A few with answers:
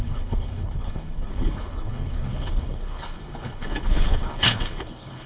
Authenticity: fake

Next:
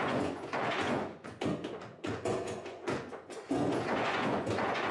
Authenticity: fake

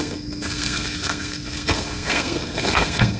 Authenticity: fake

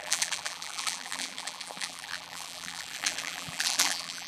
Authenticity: fake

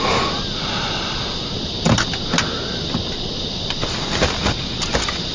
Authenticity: real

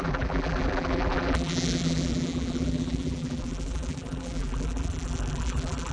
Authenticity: fake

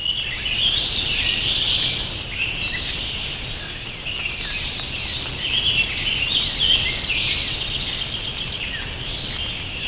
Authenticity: real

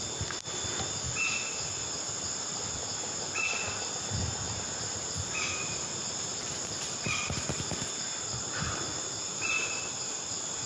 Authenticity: real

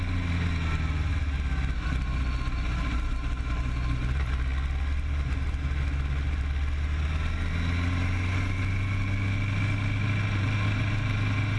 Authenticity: real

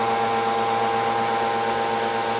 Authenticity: real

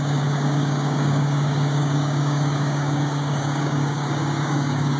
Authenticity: fake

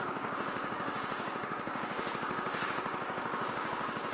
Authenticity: fake